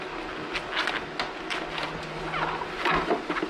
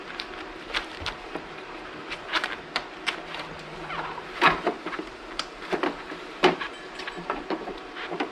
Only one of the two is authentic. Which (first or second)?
first